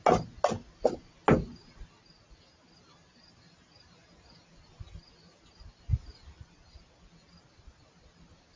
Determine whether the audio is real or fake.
real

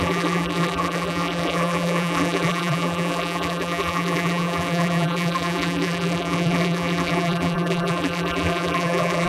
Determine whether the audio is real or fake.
fake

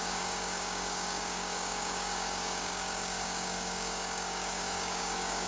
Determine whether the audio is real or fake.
fake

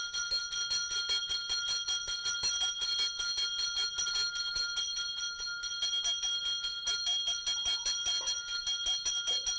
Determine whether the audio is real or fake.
real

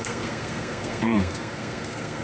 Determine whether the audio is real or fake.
fake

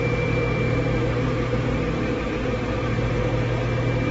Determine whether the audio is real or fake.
real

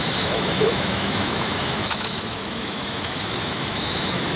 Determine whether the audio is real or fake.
fake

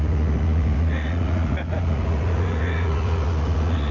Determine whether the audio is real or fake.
fake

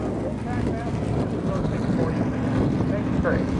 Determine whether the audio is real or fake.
real